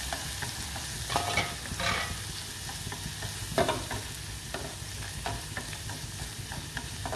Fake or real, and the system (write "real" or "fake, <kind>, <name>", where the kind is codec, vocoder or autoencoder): real